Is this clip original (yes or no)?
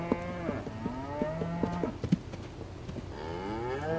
yes